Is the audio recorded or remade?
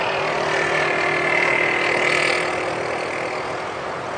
recorded